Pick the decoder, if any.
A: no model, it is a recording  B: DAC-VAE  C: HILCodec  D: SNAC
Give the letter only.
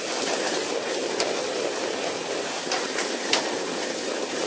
A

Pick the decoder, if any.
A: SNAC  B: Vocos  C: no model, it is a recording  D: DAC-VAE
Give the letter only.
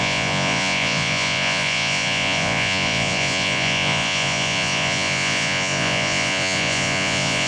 B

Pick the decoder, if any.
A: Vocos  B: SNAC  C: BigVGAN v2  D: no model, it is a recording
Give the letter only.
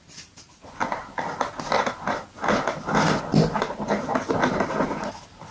D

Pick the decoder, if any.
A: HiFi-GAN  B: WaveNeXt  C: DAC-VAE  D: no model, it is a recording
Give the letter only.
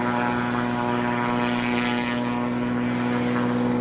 D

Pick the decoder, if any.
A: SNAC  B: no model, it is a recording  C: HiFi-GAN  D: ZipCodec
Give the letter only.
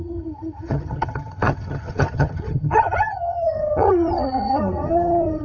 C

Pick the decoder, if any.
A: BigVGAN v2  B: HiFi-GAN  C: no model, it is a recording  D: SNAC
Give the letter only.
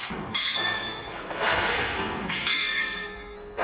D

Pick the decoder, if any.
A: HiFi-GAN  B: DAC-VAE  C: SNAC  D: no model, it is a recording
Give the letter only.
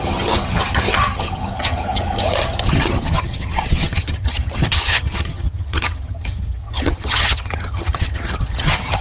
A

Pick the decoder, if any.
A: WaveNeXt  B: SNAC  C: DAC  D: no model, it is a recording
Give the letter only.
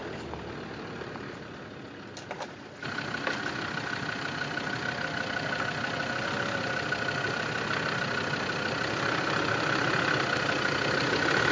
D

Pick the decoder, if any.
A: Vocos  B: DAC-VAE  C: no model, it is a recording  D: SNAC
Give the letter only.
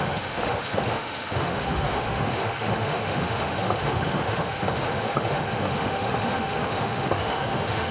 B